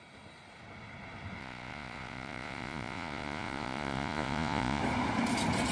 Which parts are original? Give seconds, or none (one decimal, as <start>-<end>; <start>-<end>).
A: 0.0-1.4; 4.8-5.7